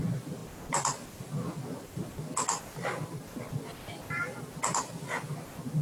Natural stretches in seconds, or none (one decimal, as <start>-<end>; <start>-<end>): 0.0-5.8